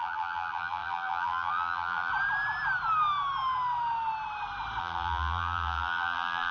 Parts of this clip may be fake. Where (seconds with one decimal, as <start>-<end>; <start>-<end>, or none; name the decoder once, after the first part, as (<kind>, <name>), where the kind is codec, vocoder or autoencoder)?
0.0-2.1 (vocoder, BigVGAN v2); 4.8-6.5